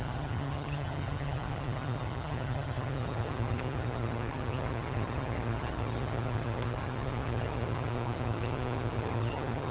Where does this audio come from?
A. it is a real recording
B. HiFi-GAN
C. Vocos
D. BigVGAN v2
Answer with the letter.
B